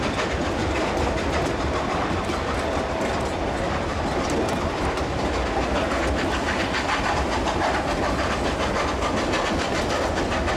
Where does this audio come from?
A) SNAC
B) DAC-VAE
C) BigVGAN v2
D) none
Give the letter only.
D